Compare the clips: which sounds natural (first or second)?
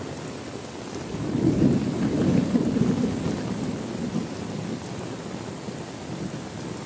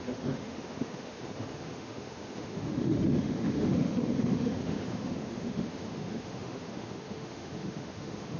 first